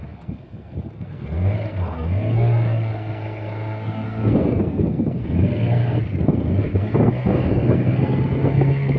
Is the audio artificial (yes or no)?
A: yes